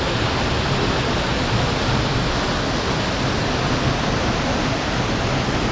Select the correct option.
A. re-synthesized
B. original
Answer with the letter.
B